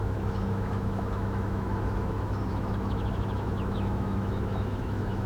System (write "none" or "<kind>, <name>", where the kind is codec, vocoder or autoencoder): autoencoder, DAC-VAE